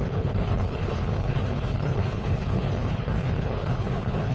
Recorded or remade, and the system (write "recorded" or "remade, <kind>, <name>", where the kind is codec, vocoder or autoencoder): remade, codec, HILCodec